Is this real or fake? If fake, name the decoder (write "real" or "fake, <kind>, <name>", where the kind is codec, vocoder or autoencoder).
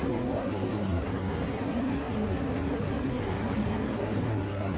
fake, codec, SNAC